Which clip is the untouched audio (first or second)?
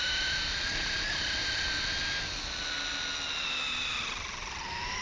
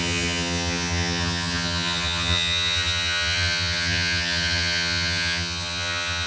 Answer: first